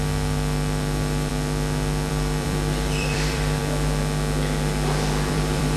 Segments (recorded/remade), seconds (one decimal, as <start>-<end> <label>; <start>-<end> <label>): 0.0-1.3 remade; 1.3-2.1 recorded; 2.1-3.6 remade; 3.6-5.3 recorded; 5.3-5.8 remade

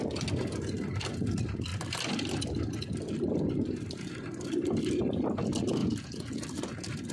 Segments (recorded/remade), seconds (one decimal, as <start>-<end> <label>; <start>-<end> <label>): 0.0-5.8 recorded; 5.8-6.4 remade; 6.4-7.1 recorded

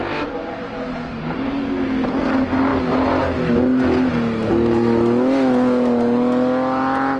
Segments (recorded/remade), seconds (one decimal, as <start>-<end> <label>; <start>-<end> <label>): 0.0-7.2 recorded

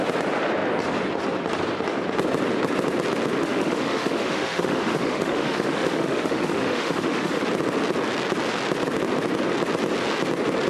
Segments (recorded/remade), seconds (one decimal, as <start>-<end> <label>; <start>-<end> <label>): 0.0-3.4 recorded; 3.4-7.4 remade; 7.4-10.7 recorded